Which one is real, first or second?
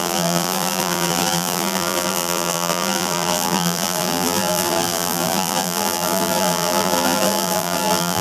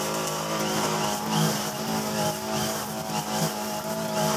second